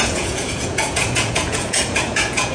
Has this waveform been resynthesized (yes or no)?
yes